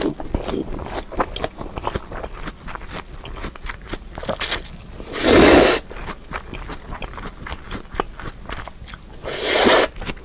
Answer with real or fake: real